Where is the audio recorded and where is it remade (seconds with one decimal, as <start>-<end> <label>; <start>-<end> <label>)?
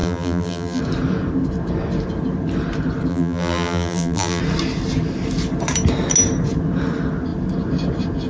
0.0-0.8 remade; 0.8-3.1 recorded; 3.1-4.4 remade; 4.4-8.3 recorded